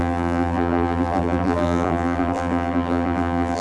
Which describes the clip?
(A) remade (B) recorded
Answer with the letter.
A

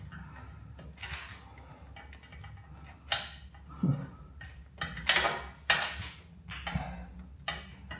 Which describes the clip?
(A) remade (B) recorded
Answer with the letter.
B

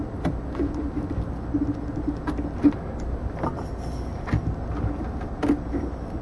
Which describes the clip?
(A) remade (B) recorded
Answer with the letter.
B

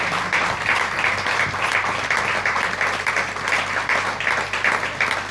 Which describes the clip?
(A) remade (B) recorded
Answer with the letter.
B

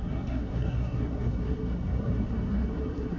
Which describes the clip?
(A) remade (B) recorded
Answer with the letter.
A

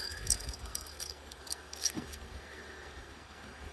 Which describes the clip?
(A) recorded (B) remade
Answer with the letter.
B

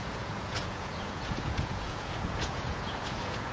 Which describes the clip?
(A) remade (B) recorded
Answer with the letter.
A